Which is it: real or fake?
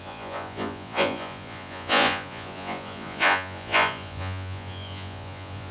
fake